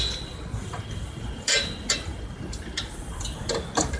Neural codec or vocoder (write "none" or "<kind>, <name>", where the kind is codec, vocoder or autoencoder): vocoder, BigVGAN v2